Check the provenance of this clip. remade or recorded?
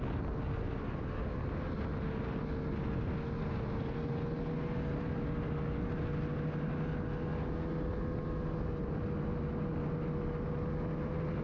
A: recorded